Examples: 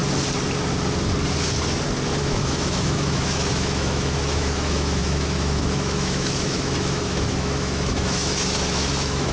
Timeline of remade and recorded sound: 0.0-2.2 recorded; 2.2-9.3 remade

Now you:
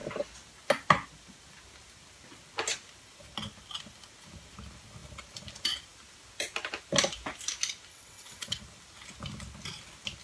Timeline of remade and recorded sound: 0.0-7.9 recorded; 7.9-8.6 remade; 8.6-10.2 recorded

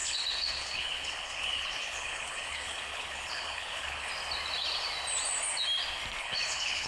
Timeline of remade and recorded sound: 0.0-4.1 remade; 4.1-6.2 recorded; 6.2-6.9 remade

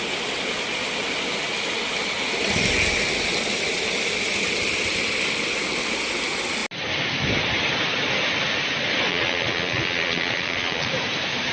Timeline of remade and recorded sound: 0.0-9.1 recorded; 9.1-10.9 remade; 10.9-11.5 recorded

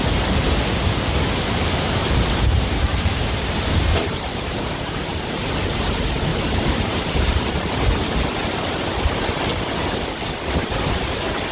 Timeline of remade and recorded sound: 0.0-2.0 recorded; 2.0-5.5 remade; 5.5-6.3 recorded; 6.3-7.4 remade; 7.4-11.5 recorded

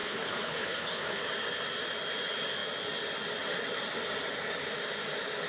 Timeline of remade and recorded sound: 0.0-1.2 remade; 1.2-5.5 recorded

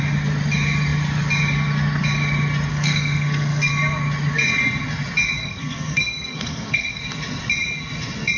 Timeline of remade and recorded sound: 0.0-2.7 recorded; 2.7-3.7 remade; 3.7-5.4 recorded; 5.4-7.0 remade; 7.0-8.4 recorded